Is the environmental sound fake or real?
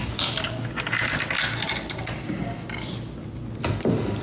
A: real